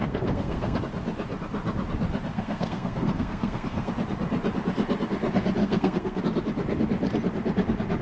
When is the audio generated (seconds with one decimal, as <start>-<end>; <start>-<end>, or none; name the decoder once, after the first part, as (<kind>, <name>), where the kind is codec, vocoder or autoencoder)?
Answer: 0.0-0.8 (codec, SNAC); 2.3-3.9; 5.6-6.2